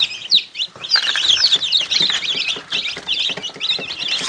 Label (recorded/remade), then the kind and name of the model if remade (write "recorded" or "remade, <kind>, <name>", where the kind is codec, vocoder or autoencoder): recorded